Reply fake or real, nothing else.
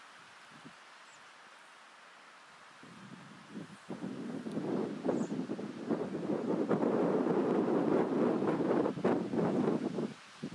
real